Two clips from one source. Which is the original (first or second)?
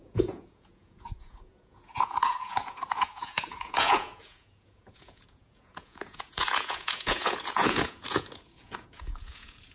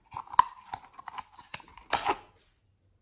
second